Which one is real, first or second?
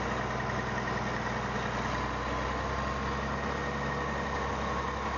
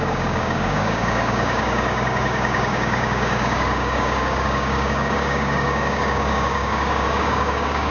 first